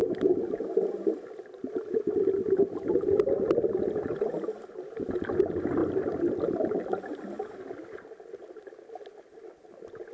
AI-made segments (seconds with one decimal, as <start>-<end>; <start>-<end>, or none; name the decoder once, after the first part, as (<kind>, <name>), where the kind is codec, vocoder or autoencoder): none